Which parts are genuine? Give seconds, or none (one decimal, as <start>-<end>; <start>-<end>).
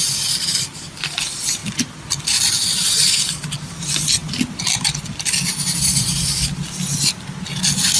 0.0-8.0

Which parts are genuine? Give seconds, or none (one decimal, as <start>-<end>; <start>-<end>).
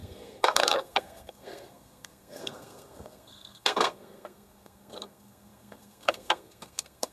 none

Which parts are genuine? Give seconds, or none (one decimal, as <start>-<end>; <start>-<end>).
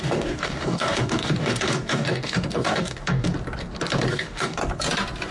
3.3-4.1; 4.6-5.3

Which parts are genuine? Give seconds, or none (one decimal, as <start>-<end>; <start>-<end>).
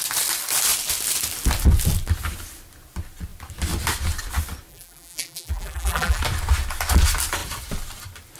0.0-4.7; 6.2-8.4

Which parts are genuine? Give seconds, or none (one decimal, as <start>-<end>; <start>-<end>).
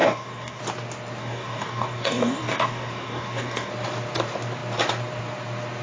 0.6-1.2; 3.7-5.8